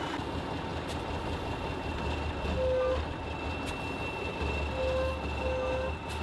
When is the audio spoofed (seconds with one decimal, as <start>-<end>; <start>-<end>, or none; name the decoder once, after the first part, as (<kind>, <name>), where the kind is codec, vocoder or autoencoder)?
none